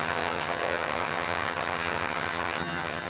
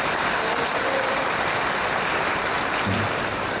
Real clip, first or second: second